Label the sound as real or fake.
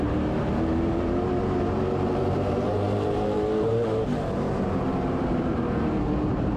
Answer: fake